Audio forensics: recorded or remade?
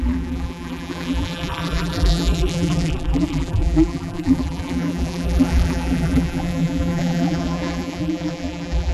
remade